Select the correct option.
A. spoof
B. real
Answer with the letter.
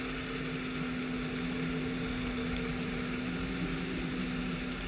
B